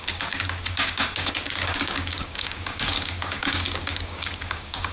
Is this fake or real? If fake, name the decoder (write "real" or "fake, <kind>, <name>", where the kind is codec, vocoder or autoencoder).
fake, codec, DAC